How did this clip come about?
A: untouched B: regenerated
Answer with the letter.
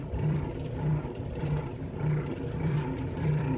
B